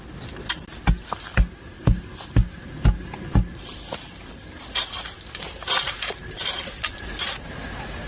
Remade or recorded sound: recorded